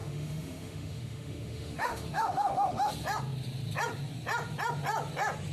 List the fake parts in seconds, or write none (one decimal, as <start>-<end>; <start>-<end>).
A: 0.0-2.9